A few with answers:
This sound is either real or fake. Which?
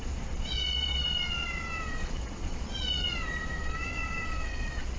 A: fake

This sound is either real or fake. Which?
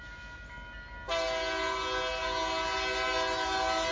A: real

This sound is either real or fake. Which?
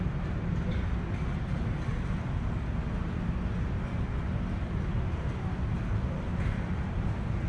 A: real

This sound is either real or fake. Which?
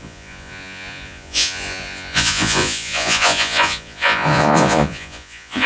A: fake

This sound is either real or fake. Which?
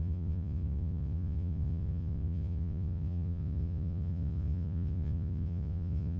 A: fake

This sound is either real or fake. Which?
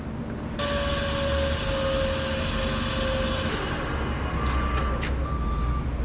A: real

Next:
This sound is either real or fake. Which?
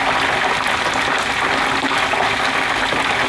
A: real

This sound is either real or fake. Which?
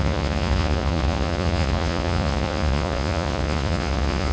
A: fake